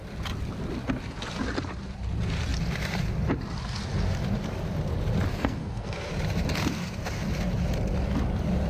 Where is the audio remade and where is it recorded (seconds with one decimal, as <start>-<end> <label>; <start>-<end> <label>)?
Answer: 0.0-5.3 recorded; 5.3-6.1 remade; 6.1-8.7 recorded

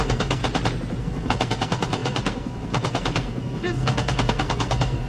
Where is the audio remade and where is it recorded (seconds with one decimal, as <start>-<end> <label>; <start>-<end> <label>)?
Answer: 0.0-0.4 remade; 0.4-1.0 recorded; 1.0-5.1 remade

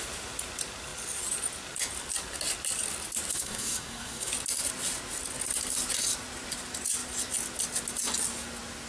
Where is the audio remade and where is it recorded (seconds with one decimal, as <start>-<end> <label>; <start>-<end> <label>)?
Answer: 0.0-3.3 recorded; 3.3-4.3 remade; 4.3-8.9 recorded

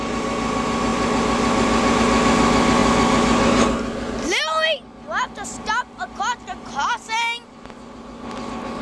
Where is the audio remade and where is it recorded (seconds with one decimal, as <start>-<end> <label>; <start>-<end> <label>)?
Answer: 0.0-8.8 recorded